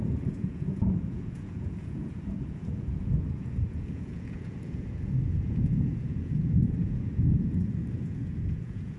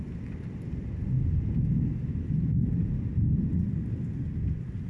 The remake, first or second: first